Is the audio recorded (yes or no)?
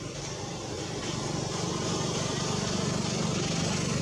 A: yes